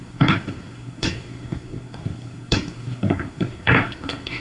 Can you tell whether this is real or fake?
fake